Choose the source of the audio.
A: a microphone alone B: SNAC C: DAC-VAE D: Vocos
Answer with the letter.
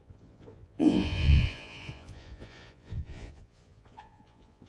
D